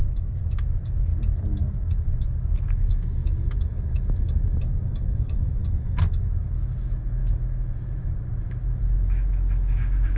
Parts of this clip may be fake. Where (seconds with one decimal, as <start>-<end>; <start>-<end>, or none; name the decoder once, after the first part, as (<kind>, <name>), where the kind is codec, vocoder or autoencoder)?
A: 0.0-1.1 (autoencoder, DAC-VAE); 2.2-5.6; 6.4-10.2